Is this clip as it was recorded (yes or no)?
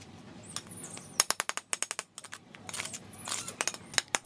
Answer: yes